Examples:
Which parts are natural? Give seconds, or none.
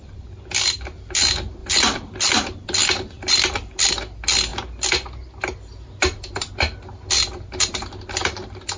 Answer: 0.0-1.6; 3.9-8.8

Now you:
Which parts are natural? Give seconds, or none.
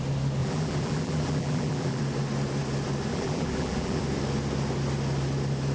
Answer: 0.0-0.4; 2.0-3.1; 4.0-5.7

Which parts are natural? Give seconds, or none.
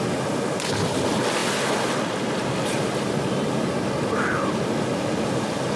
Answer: 0.0-5.8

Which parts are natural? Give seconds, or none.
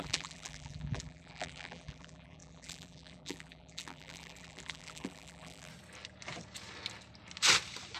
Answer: 5.7-8.0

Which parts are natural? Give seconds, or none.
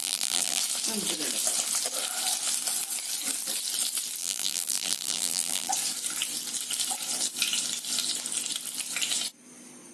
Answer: 0.6-4.2; 5.7-9.9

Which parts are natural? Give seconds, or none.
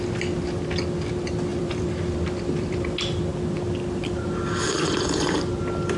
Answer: 0.0-1.5; 3.3-6.0